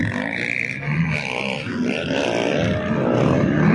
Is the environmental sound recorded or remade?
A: recorded